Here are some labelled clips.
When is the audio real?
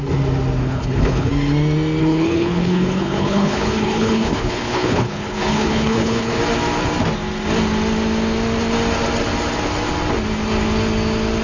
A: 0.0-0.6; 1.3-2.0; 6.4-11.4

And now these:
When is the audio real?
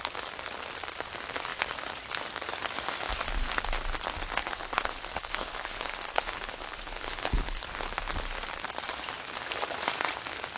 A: 0.0-4.4; 7.7-10.6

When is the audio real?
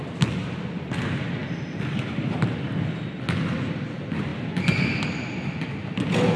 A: 0.0-6.4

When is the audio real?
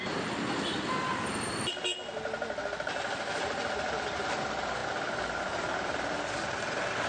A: 0.0-7.1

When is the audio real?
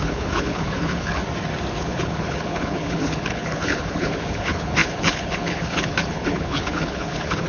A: 1.2-1.8